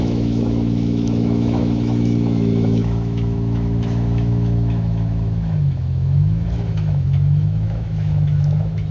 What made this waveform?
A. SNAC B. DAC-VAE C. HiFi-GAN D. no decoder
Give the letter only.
B